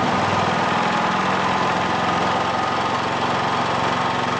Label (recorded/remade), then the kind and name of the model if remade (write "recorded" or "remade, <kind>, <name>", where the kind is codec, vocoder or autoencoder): recorded